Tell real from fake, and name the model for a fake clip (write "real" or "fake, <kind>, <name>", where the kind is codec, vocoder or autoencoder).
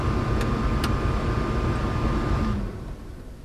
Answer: real